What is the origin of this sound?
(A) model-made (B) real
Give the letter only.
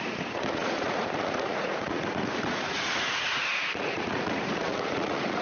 A